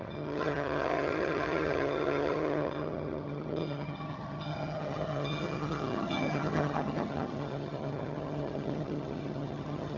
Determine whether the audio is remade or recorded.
remade